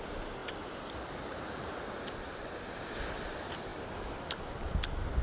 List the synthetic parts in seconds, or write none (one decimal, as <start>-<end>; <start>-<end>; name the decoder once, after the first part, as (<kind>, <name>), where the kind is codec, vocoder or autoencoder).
none